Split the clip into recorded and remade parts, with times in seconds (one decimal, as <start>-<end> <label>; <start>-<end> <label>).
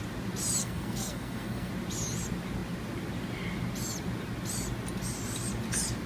0.0-0.6 recorded; 0.6-1.7 remade; 1.7-6.1 recorded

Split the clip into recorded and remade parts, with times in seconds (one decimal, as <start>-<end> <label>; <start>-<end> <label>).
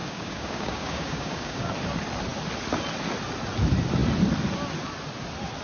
0.0-1.7 remade; 1.7-5.6 recorded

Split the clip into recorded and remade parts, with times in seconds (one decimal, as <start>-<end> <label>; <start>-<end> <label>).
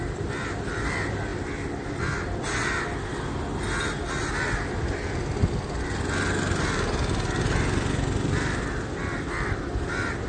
0.0-10.3 recorded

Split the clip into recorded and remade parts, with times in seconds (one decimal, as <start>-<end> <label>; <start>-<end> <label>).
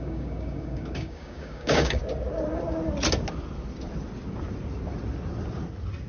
0.0-2.0 remade; 2.0-6.1 recorded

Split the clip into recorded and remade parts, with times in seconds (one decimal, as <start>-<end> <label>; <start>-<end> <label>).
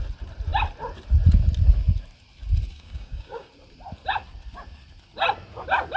0.0-2.7 recorded; 2.7-3.5 remade; 3.5-6.0 recorded